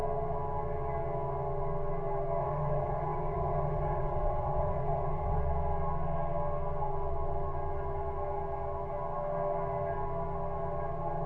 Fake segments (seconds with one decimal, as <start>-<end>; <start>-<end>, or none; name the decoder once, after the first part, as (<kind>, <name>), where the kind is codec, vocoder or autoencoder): 2.4-5.4 (vocoder, WaveNeXt)